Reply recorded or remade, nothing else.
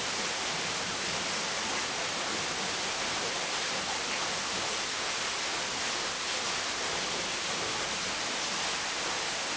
recorded